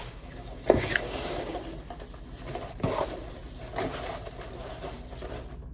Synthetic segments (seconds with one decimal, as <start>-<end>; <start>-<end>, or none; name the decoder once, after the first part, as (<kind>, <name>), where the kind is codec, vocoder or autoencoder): 0.0-1.6 (codec, DAC)